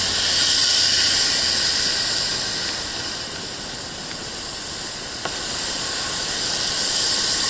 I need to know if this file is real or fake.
real